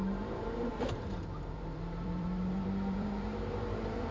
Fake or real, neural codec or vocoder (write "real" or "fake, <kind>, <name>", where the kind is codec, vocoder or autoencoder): fake, vocoder, BigVGAN v2